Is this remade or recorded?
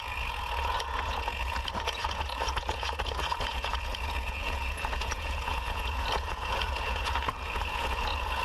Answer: remade